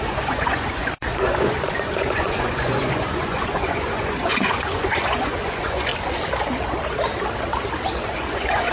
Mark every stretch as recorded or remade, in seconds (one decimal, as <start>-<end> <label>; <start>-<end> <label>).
0.0-5.9 remade; 5.9-8.0 recorded; 8.0-8.7 remade